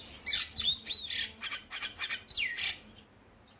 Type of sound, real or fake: real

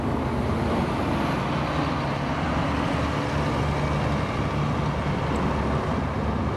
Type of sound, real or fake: real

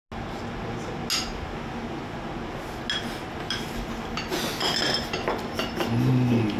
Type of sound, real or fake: real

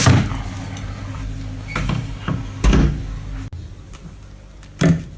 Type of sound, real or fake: real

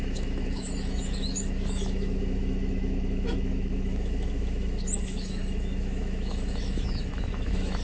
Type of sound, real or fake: fake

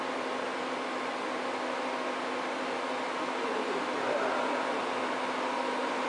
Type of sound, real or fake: real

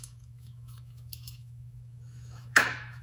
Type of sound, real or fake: fake